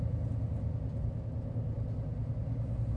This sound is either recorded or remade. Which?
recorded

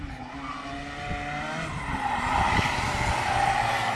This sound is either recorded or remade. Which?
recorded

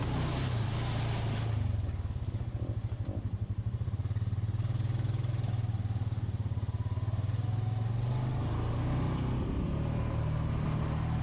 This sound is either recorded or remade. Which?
recorded